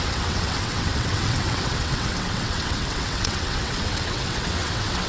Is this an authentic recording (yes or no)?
no